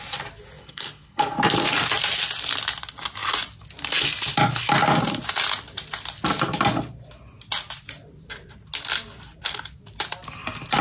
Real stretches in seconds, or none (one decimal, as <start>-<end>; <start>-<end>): 0.0-0.6; 1.3-10.8